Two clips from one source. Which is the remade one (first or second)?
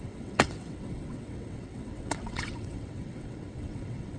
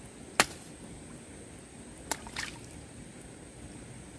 first